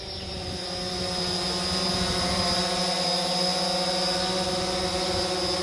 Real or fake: real